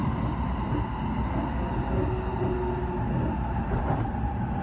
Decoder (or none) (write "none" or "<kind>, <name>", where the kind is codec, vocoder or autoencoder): none